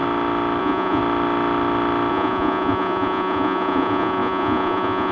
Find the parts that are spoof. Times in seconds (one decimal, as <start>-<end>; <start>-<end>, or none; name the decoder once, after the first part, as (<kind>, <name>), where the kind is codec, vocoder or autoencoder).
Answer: 0.6-1.0 (vocoder, Vocos); 2.1-5.1